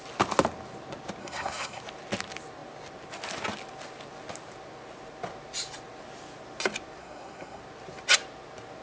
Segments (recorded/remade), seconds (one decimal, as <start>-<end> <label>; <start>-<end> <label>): 0.0-1.2 recorded; 1.2-1.8 remade; 1.8-7.0 recorded; 7.0-7.6 remade; 7.6-8.8 recorded